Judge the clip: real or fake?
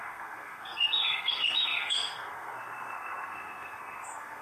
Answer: fake